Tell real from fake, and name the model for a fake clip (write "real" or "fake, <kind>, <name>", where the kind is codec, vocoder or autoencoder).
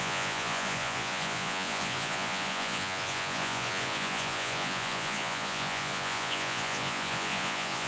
fake, vocoder, Vocos